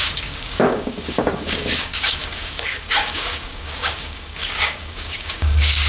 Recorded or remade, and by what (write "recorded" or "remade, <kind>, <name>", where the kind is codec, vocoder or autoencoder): remade, codec, DAC